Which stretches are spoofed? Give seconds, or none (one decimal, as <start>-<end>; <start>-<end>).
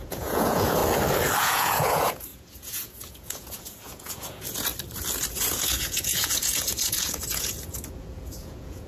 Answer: 0.0-0.8; 1.4-4.7; 5.3-8.9